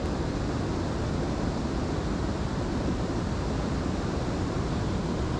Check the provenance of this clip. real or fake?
real